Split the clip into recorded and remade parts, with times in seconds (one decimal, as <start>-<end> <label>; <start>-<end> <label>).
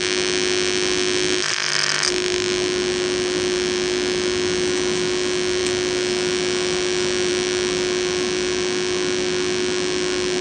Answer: 0.0-10.4 recorded